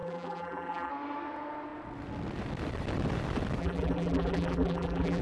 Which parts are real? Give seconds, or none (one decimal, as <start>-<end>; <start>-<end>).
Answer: 0.9-3.6